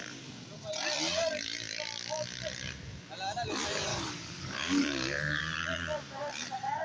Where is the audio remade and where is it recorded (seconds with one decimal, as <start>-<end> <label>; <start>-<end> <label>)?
0.0-3.9 recorded; 3.9-5.4 remade; 5.4-6.8 recorded